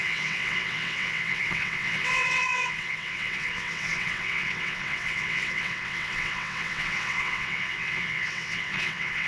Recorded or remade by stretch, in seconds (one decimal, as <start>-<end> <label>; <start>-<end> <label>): 0.0-9.3 remade